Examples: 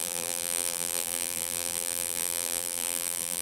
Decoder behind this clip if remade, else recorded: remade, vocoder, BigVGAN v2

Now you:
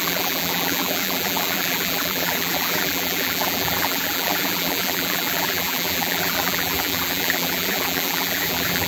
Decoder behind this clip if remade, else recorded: remade, vocoder, BigVGAN v2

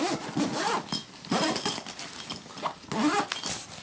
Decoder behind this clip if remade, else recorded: recorded